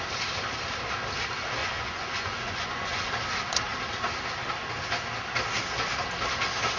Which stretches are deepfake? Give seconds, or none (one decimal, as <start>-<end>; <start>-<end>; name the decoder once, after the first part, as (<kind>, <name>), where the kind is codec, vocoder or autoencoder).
1.6-3.1 (vocoder, Vocos)